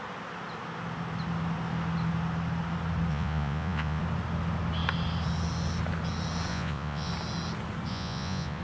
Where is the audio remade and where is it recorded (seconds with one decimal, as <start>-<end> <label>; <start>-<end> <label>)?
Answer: 0.0-3.1 recorded; 3.1-4.0 remade; 4.0-6.5 recorded; 6.5-7.1 remade; 7.1-7.9 recorded; 7.9-8.6 remade